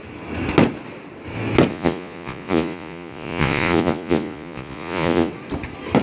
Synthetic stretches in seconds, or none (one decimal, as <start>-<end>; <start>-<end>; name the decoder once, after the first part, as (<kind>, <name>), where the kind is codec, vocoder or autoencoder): 1.7-5.3 (vocoder, Vocos)